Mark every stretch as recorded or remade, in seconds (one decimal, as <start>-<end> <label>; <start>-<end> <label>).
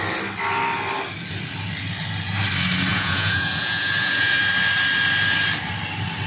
0.0-2.9 recorded; 2.9-4.4 remade; 4.4-6.3 recorded